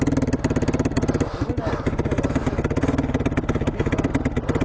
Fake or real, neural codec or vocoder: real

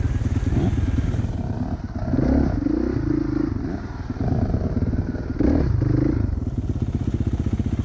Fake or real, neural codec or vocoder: real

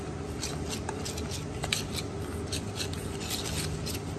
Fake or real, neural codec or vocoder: real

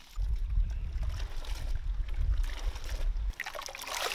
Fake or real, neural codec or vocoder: real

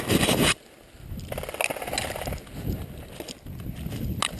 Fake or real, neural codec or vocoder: real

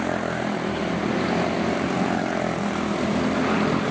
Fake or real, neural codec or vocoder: real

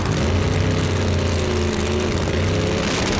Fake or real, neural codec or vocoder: real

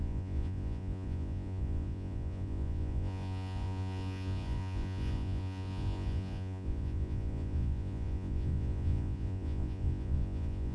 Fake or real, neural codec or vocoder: fake, vocoder, Vocos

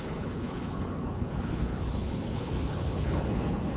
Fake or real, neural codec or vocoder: fake, codec, HILCodec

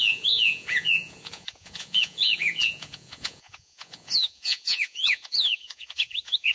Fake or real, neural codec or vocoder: fake, vocoder, Vocos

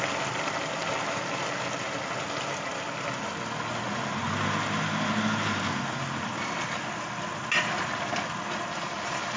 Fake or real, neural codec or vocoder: real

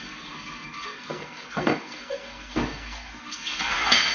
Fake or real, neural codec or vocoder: fake, codec, SNAC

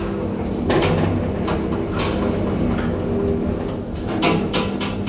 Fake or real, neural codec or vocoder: real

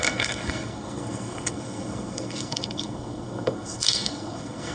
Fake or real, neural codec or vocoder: fake, codec, SNAC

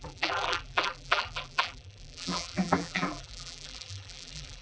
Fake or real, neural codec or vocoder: fake, vocoder, BigVGAN v2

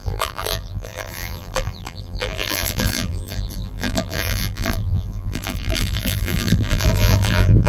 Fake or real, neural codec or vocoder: fake, vocoder, BigVGAN v2